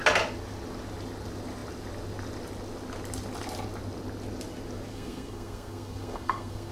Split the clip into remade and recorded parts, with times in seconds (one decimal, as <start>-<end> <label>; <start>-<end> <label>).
0.0-4.9 recorded; 4.9-6.7 remade

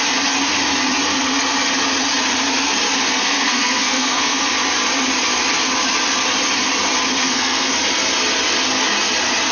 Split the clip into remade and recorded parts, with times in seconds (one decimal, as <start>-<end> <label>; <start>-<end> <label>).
0.0-3.2 recorded; 3.2-4.4 remade; 4.4-7.2 recorded; 7.2-7.8 remade; 7.8-9.5 recorded

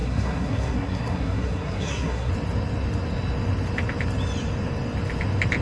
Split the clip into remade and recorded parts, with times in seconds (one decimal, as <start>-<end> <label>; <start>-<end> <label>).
0.0-2.3 remade; 2.3-5.6 recorded